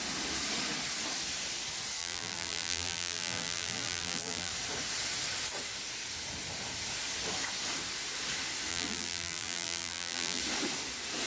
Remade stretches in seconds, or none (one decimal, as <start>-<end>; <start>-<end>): 2.0-4.5; 8.7-10.4